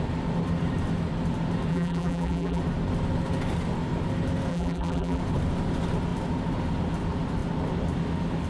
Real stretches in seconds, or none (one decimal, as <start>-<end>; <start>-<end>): 0.0-1.7; 2.6-4.5; 5.2-8.5